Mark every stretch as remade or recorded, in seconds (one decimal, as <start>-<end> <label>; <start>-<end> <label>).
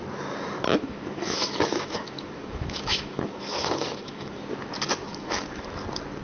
0.0-0.7 recorded; 0.7-4.4 remade; 4.4-5.1 recorded; 5.1-5.6 remade; 5.6-6.2 recorded